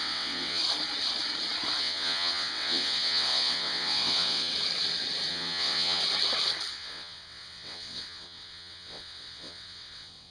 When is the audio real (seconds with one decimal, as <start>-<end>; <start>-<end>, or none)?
0.6-1.8; 4.5-5.3; 6.0-6.7